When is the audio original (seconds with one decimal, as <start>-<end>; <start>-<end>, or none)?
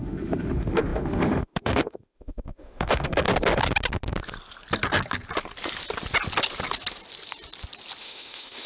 3.3-8.0